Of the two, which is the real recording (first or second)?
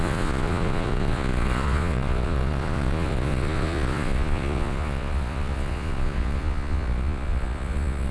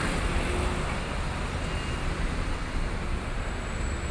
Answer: second